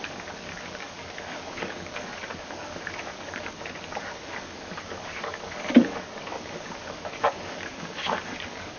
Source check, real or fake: fake